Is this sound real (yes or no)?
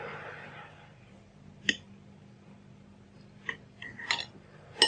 yes